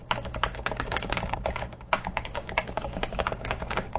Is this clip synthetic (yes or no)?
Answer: yes